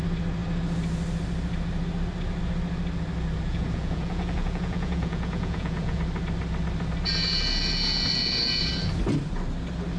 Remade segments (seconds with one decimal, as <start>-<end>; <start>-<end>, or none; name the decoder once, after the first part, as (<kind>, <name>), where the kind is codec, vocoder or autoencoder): 3.5-6.0 (vocoder, Vocos)